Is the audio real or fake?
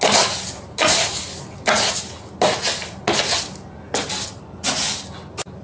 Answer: real